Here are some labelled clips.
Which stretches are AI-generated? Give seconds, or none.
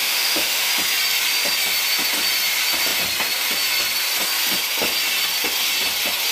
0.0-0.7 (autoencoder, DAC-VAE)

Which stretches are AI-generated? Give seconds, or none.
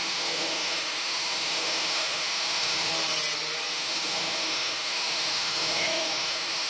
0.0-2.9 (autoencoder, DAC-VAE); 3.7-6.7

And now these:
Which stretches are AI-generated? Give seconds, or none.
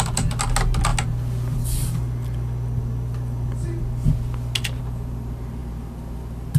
none